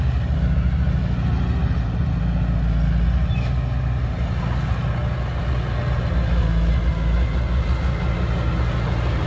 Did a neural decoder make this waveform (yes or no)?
no